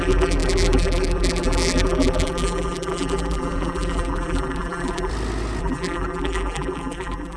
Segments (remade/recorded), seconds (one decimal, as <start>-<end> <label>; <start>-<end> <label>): 0.0-5.1 remade; 5.1-5.6 recorded; 5.6-7.4 remade